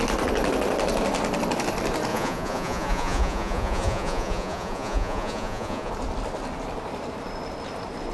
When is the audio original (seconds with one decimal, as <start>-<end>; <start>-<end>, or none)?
0.0-2.1; 5.9-8.1